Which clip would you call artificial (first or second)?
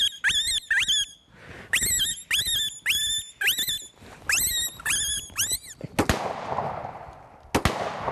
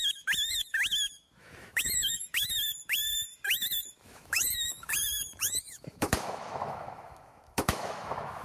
second